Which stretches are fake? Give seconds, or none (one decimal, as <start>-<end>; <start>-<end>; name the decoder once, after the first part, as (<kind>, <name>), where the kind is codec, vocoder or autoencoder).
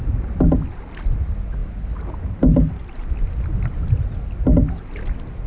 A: none